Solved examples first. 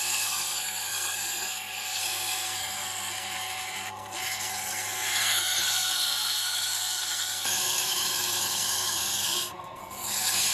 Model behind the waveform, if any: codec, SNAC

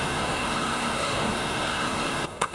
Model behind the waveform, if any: codec, SNAC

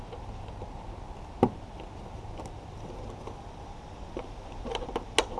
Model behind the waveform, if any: none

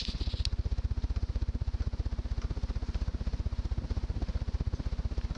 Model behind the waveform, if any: none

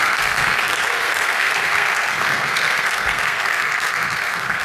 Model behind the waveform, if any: codec, SNAC